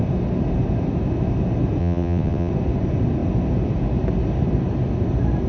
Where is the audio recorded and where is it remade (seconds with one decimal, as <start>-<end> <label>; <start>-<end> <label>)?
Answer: 0.0-1.8 recorded; 1.8-2.5 remade; 2.5-5.5 recorded